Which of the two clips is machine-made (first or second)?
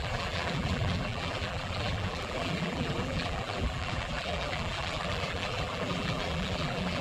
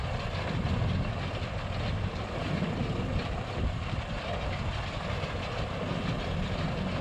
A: first